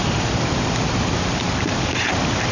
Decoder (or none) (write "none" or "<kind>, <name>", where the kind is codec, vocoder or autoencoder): none